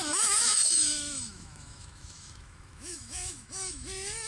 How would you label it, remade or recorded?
remade